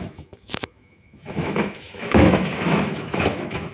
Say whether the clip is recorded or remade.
remade